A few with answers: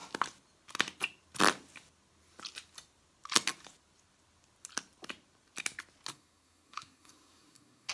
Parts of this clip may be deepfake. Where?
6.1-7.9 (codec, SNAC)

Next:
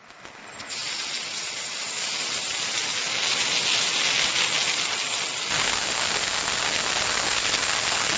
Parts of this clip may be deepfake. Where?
none

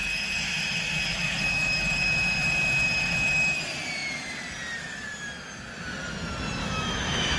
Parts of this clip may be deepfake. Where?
0.0-3.6 (autoencoder, DAC-VAE); 6.6-7.4

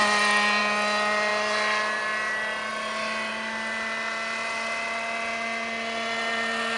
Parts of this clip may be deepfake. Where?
none